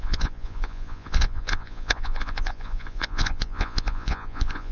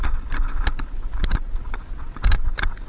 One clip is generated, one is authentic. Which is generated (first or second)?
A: first